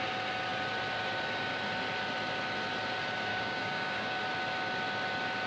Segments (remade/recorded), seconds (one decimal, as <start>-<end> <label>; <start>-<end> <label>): 0.0-3.3 recorded; 3.3-4.2 remade; 4.2-5.5 recorded